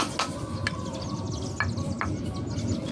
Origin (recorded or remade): recorded